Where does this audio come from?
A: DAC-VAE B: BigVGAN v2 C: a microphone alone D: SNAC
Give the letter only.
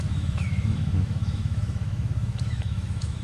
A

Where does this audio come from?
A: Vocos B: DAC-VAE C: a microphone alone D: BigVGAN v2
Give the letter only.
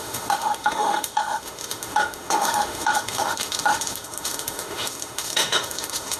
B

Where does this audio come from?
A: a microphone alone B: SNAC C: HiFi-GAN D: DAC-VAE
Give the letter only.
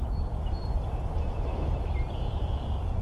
A